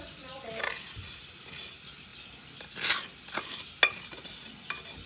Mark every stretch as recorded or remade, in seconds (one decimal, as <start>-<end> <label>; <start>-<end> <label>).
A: 0.0-5.1 recorded